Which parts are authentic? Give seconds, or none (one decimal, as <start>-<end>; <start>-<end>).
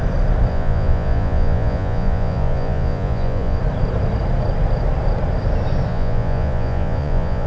0.0-0.5; 3.6-5.9